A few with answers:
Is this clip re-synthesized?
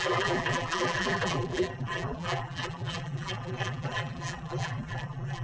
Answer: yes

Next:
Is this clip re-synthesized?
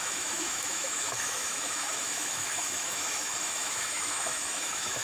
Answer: yes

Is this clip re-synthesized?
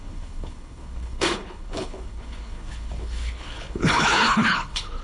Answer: yes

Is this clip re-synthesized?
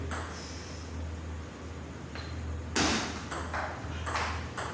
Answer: no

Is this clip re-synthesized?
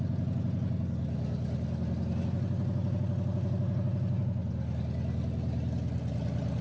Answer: no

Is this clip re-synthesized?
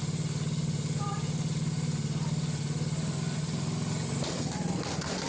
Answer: no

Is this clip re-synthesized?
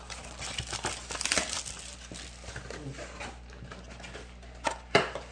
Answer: no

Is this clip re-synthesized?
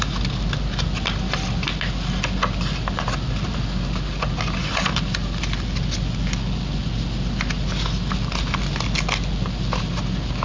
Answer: no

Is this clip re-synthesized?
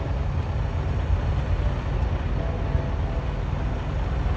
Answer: no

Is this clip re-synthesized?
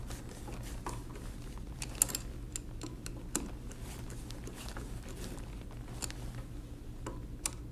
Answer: no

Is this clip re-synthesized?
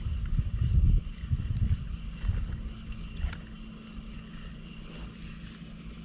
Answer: no